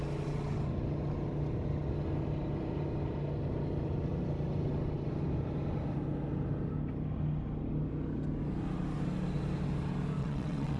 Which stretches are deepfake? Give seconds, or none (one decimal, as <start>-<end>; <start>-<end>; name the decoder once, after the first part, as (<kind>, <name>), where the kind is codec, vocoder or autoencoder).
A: 10.2-10.8 (vocoder, WaveNeXt)